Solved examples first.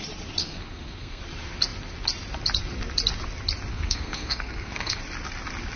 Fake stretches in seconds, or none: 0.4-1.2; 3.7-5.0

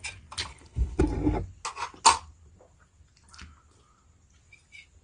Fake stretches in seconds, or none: 0.5-1.0

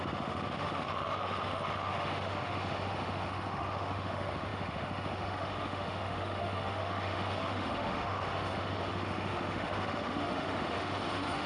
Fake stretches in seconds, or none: 0.0-11.5

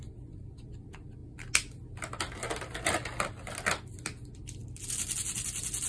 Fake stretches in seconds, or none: none

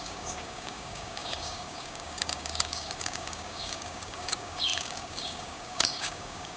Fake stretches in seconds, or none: 0.0-6.6

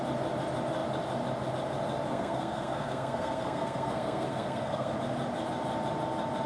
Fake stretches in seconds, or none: 2.1-4.9

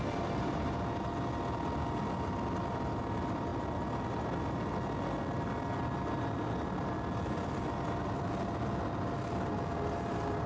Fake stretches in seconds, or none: none